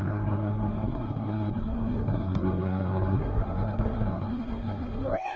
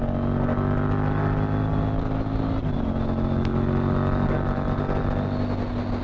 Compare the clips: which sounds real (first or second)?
second